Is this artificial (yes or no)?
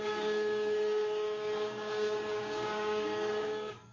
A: yes